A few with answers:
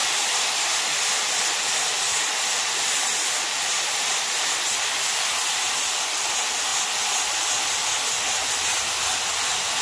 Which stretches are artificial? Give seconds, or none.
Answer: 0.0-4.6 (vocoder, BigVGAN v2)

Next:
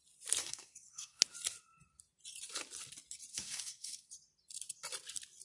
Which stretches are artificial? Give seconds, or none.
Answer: 0.4-1.2 (codec, SNAC); 3.3-4.1

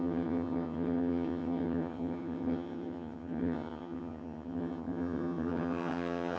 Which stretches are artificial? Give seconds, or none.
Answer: 0.0-6.4 (vocoder, HiFi-GAN)

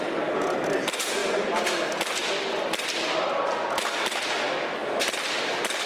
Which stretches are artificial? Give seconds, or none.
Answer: none